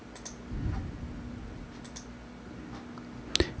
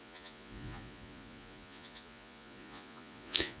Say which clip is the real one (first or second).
first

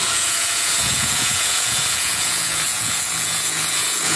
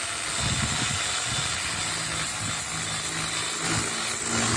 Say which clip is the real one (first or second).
second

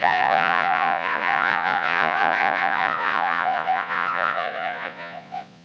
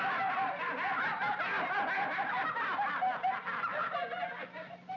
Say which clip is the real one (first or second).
second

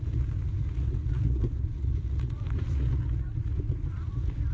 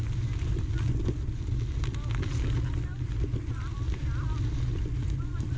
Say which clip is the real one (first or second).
second